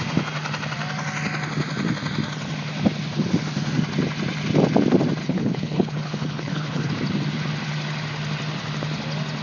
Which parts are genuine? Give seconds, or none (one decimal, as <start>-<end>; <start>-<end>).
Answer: 0.0-5.2; 6.9-9.4